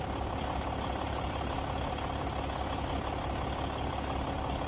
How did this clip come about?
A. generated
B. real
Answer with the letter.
B